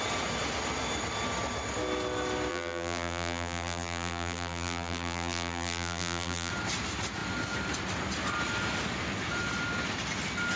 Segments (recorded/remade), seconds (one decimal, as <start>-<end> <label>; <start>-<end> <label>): 0.0-2.5 recorded; 2.5-6.5 remade; 6.5-10.6 recorded